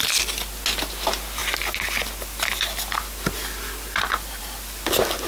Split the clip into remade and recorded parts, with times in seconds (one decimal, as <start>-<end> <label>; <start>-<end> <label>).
0.0-5.3 recorded